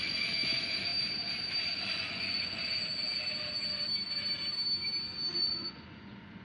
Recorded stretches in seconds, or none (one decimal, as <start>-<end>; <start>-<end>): 0.9-1.8; 2.6-5.3